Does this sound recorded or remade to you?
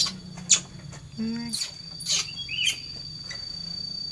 recorded